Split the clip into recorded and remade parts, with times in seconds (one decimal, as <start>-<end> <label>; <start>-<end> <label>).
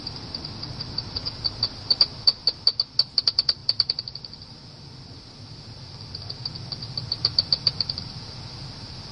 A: 0.0-2.4 remade; 2.4-3.2 recorded; 3.2-9.1 remade